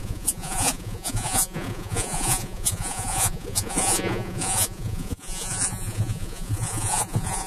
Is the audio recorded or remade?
remade